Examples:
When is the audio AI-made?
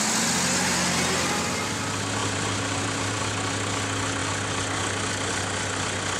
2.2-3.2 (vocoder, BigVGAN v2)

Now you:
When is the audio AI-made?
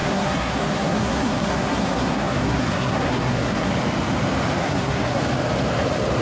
0.0-3.7 (codec, SNAC); 4.6-5.2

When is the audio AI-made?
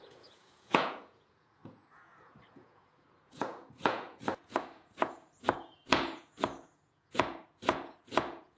0.0-8.6 (vocoder, Vocos)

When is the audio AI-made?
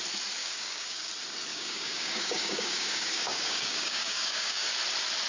0.4-1.1 (codec, DAC); 1.5-4.7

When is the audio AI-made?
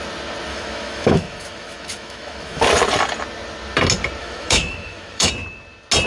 0.5-2.6 (autoencoder, DAC-VAE); 4.2-5.3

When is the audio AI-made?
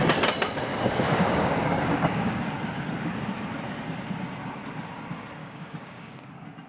0.7-2.4 (codec, DAC); 5.4-6.3